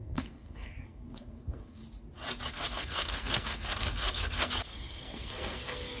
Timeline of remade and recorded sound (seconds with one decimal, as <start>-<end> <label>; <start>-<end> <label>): 0.0-1.8 remade; 1.8-2.5 recorded; 2.5-6.0 remade